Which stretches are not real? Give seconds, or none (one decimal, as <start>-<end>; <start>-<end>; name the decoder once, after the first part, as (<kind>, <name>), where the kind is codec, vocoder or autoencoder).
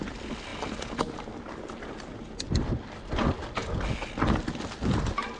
none